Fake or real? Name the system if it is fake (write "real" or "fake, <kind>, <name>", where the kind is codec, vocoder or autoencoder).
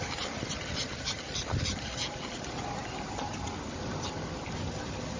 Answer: real